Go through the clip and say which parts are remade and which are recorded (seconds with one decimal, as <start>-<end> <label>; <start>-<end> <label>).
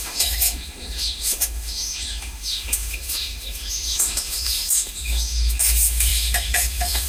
0.0-7.1 remade